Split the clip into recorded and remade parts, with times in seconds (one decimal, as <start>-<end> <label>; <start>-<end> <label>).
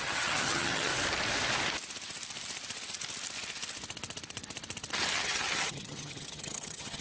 0.0-0.9 remade; 0.9-5.1 recorded; 5.1-7.0 remade